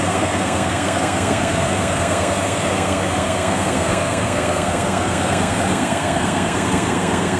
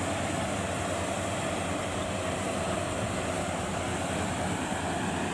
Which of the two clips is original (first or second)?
second